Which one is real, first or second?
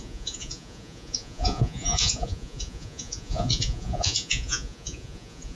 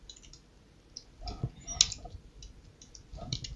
second